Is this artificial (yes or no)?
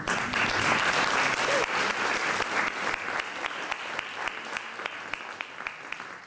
no